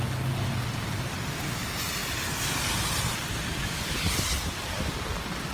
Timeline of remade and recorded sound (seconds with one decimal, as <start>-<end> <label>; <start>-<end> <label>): 0.0-5.5 recorded

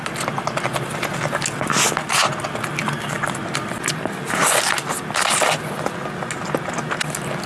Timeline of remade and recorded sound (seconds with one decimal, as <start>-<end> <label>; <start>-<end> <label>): 0.0-7.5 recorded

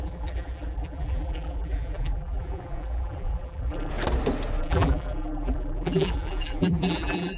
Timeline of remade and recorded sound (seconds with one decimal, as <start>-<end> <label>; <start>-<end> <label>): 0.0-3.9 remade; 3.9-4.6 recorded; 4.6-7.4 remade

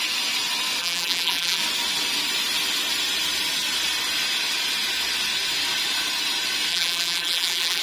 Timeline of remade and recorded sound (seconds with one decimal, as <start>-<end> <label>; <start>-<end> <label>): 0.0-0.8 recorded; 0.8-1.6 remade; 1.6-6.7 recorded; 6.7-7.8 remade

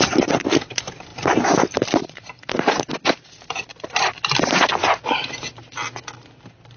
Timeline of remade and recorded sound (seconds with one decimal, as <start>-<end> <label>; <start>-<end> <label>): 0.0-1.1 recorded; 1.1-2.9 remade; 2.9-6.8 recorded

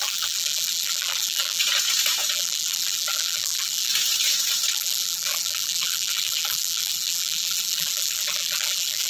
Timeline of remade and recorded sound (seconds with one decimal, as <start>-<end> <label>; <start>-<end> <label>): 0.0-1.6 remade; 1.6-2.3 recorded; 2.3-3.9 remade; 3.9-4.7 recorded; 4.7-9.1 remade

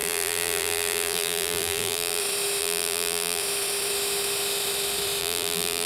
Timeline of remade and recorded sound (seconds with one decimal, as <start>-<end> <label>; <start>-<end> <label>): 0.0-2.2 remade; 2.2-2.6 recorded; 2.6-3.4 remade; 3.4-5.2 recorded; 5.2-5.9 remade